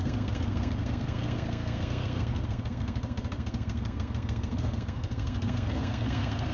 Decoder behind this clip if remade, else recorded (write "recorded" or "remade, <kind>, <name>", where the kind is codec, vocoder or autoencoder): remade, codec, SNAC